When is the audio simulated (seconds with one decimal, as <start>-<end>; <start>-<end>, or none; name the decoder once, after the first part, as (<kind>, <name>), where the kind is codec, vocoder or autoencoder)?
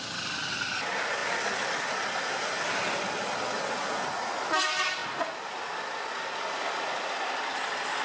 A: 1.2-1.7 (vocoder, BigVGAN v2); 5.0-5.9